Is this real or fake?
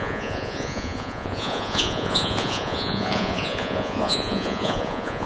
fake